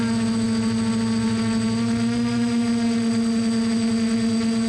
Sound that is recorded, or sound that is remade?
recorded